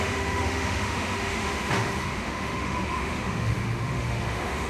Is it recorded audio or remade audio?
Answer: remade